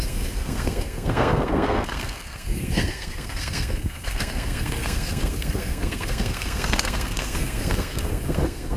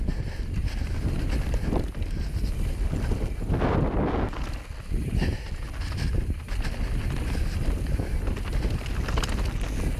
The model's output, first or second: first